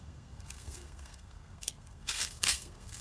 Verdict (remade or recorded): remade